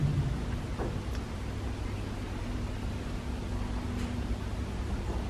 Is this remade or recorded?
recorded